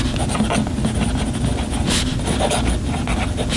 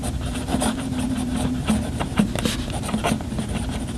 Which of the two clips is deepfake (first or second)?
second